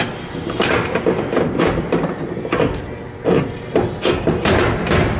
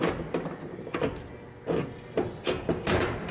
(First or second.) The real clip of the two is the second